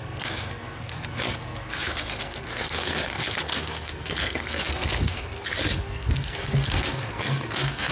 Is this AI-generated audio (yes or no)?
yes